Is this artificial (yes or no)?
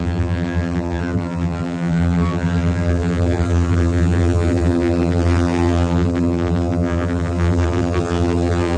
yes